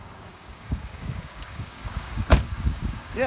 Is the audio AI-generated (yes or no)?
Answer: yes